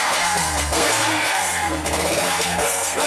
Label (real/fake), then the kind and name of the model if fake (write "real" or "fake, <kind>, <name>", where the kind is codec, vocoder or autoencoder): fake, codec, SNAC